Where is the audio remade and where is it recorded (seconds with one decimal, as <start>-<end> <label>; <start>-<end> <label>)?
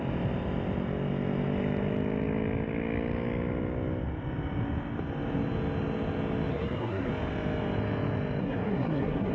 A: 0.0-6.5 recorded; 6.5-7.1 remade; 7.1-8.4 recorded; 8.4-9.3 remade